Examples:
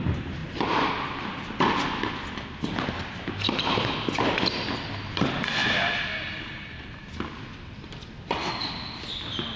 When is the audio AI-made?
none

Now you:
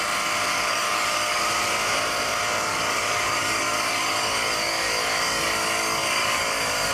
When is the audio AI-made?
0.5-1.4; 2.7-6.9

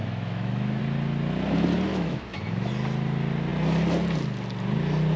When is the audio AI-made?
0.0-0.8; 1.9-2.7

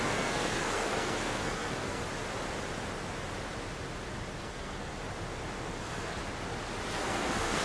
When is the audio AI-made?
0.0-2.0; 4.4-4.9; 5.7-6.2; 6.9-7.6

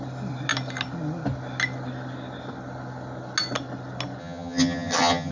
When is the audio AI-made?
4.2-5.3

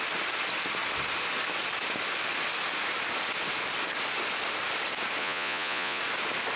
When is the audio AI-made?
5.2-6.0

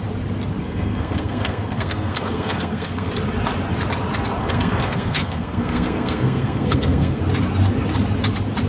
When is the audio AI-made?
0.6-3.1; 4.4-7.2

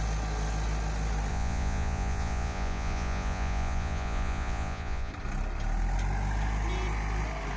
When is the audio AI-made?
1.3-5.1